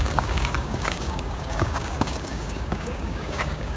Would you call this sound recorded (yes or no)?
no